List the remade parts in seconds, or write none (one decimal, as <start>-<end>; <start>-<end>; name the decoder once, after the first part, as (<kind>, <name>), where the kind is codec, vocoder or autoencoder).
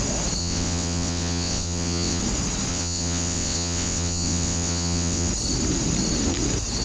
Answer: 0.4-2.2 (vocoder, WaveNeXt); 2.7-5.3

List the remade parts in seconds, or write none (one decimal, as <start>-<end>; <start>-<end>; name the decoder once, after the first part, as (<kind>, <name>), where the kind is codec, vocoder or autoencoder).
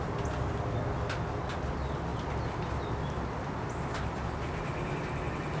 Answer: none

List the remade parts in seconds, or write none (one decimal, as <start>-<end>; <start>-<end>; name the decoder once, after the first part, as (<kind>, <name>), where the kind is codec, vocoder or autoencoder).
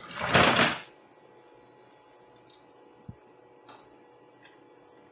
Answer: none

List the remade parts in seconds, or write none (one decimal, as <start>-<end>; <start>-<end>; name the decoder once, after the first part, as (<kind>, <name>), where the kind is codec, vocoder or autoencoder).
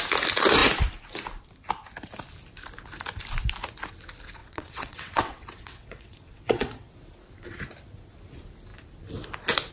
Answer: 4.4-6.9 (vocoder, WaveNeXt)